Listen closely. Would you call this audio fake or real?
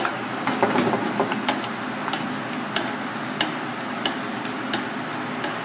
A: real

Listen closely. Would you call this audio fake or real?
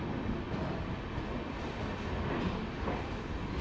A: real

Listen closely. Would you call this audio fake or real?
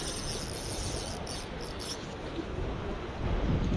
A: real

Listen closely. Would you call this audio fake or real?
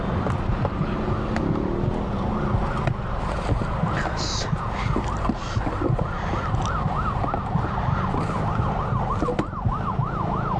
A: real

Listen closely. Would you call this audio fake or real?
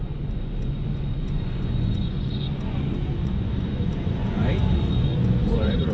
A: fake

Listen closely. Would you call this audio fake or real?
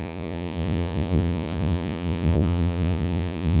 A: fake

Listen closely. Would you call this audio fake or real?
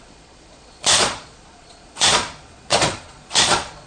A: fake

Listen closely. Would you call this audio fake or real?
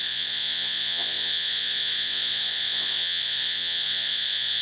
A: fake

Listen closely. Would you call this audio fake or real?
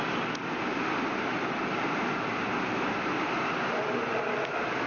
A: real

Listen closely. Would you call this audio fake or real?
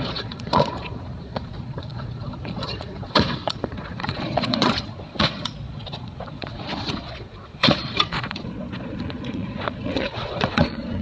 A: fake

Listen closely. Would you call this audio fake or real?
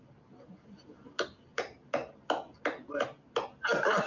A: real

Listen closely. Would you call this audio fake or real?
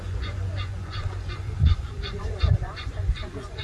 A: fake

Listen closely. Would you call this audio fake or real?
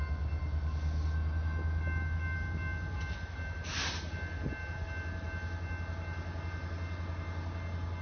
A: real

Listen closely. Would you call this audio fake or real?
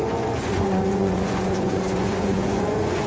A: fake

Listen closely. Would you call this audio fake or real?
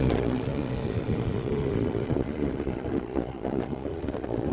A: fake